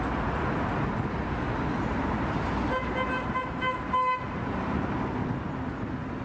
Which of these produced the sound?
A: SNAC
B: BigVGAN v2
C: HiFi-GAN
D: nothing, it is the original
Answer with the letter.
D